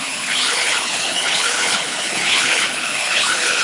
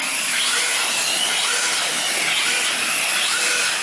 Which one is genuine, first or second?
second